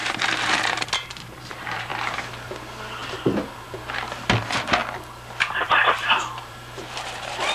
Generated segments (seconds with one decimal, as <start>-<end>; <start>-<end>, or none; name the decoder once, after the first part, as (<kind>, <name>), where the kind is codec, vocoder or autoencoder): 0.0-1.9 (vocoder, BigVGAN v2); 2.5-3.0; 4.2-4.8; 5.9-7.5